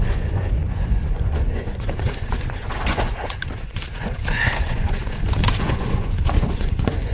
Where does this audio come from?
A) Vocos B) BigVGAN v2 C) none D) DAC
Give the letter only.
A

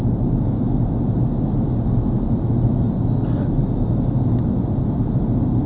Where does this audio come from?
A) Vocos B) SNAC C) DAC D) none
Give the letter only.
D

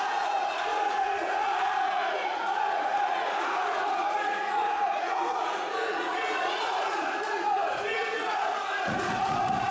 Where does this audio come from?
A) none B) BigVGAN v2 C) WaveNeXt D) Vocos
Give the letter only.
D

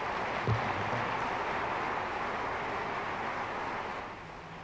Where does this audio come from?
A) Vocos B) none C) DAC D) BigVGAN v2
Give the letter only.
B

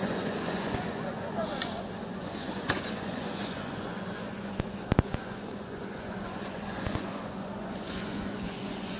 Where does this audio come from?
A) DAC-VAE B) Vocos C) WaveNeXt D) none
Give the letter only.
B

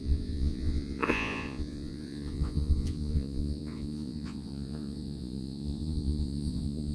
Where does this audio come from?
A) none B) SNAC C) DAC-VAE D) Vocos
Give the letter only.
D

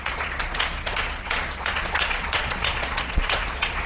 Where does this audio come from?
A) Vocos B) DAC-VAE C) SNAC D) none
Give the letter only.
A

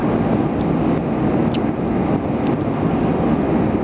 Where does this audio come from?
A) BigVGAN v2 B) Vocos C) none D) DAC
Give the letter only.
C